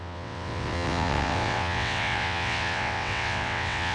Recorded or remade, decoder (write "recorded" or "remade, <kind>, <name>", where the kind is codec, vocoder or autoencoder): remade, vocoder, WaveNeXt